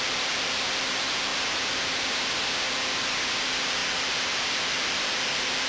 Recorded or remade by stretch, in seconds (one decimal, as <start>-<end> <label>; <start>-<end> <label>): 0.0-1.3 remade; 1.3-3.4 recorded; 3.4-5.7 remade